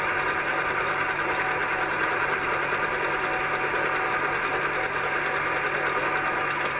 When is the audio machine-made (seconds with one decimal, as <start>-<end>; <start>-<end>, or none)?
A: none